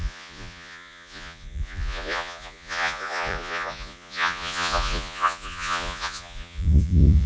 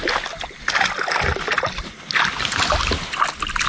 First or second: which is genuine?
second